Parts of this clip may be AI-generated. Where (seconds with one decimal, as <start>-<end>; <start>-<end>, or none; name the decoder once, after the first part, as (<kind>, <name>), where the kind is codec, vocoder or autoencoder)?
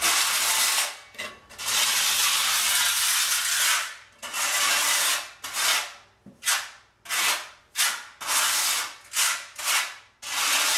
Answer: 0.7-1.3 (codec, SNAC)